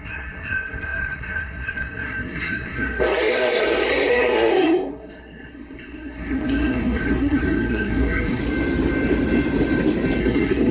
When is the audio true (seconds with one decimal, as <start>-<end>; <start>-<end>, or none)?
8.4-10.2